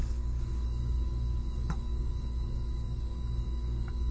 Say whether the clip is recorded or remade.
remade